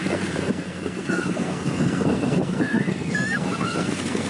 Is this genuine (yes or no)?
no